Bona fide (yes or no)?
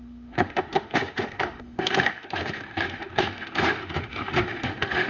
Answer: no